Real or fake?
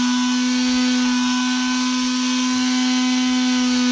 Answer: real